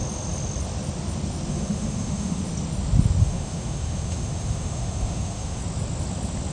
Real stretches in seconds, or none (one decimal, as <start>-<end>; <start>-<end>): 0.0-1.5; 2.4-3.2; 5.6-6.5